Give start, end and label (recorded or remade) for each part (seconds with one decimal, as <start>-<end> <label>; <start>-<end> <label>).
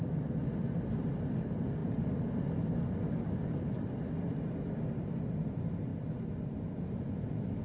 0.0-7.6 recorded